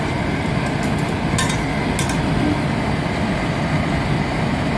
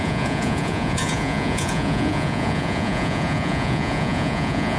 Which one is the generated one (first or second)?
second